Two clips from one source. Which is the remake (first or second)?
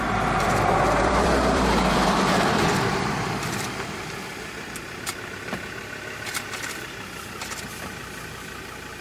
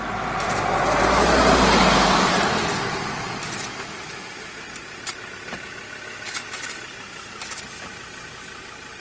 first